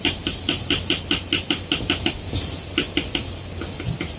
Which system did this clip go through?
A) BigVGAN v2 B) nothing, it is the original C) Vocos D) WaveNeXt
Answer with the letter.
B